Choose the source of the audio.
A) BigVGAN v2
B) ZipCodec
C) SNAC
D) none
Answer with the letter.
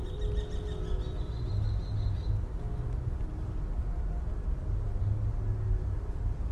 D